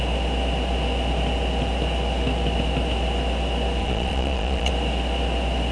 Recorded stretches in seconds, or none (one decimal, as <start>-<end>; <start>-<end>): 0.0-3.8; 4.7-5.7